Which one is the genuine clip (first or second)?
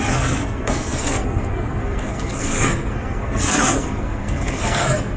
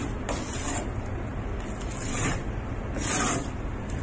second